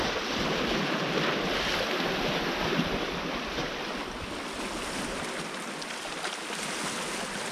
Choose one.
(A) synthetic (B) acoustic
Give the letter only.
B